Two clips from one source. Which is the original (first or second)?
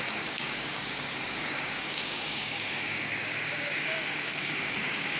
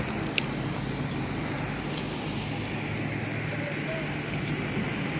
second